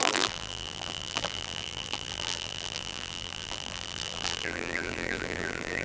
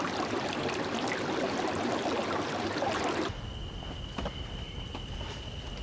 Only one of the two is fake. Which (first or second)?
first